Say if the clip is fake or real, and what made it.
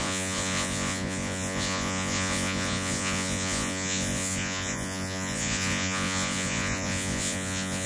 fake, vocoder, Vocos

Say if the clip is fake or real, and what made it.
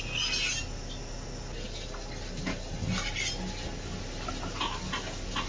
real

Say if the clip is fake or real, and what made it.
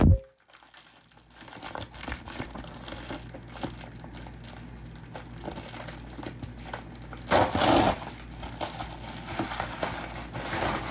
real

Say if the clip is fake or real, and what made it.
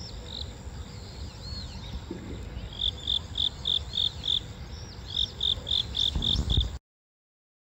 real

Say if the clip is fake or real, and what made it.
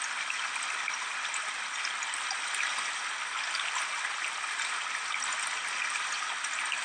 real